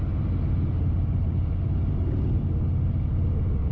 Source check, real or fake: real